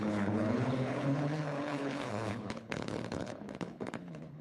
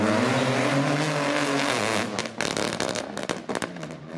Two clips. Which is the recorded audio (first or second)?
second